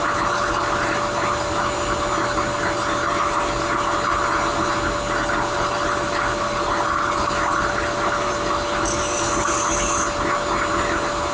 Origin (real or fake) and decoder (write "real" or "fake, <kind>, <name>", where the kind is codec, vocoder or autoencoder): real